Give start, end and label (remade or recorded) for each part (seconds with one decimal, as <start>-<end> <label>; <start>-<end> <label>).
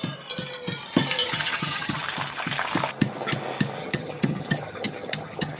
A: 0.0-1.2 recorded; 1.2-2.0 remade; 2.0-3.8 recorded; 3.8-5.6 remade